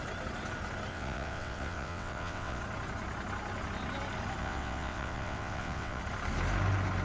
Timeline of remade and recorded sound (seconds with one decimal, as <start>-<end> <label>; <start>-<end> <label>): 0.0-0.9 recorded; 0.9-2.6 remade; 2.6-4.4 recorded; 4.4-6.0 remade; 6.0-7.0 recorded